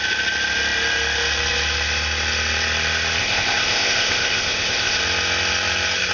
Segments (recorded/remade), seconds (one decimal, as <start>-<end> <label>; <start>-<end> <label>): 0.0-3.2 recorded; 3.2-5.0 remade; 5.0-6.1 recorded

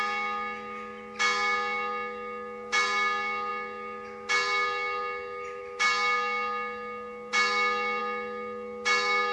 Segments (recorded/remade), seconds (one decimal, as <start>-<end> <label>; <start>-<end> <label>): 0.0-9.3 recorded

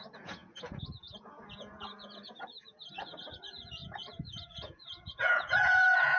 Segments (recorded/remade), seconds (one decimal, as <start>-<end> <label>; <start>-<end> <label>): 0.0-6.2 remade

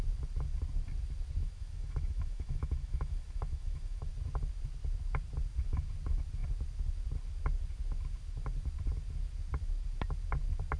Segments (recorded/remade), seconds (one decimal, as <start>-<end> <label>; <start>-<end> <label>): 0.0-1.4 recorded; 1.4-4.1 remade; 4.1-10.8 recorded

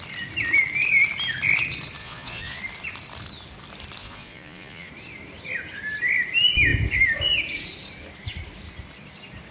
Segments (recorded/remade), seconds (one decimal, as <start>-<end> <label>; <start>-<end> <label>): 0.0-2.0 recorded; 2.0-2.6 remade; 2.6-4.0 recorded; 4.0-4.9 remade; 4.9-9.5 recorded

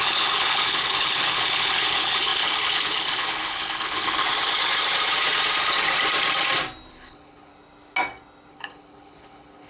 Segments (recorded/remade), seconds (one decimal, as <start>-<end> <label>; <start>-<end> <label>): 0.0-4.2 remade; 4.2-6.9 recorded; 6.9-7.5 remade; 7.5-8.5 recorded; 8.5-9.7 remade

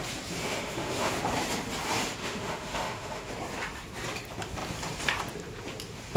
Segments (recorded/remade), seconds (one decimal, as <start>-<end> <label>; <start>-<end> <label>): 0.0-0.4 recorded; 0.4-1.1 remade; 1.1-2.2 recorded; 2.2-3.3 remade; 3.3-6.2 recorded